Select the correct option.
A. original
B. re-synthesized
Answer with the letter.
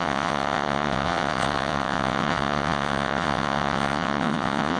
B